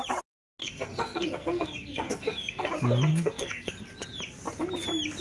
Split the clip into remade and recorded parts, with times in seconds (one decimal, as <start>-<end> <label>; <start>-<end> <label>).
0.0-0.6 recorded; 0.6-2.7 remade; 2.7-3.1 recorded; 3.1-3.7 remade; 3.7-5.2 recorded